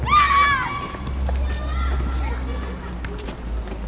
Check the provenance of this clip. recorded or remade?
recorded